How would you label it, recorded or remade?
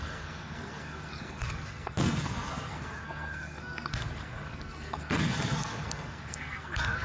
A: remade